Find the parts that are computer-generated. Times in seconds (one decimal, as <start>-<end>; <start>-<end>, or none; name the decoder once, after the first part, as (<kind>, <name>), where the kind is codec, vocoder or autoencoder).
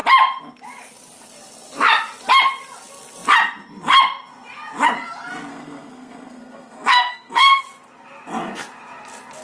5.5-7.6 (codec, SNAC)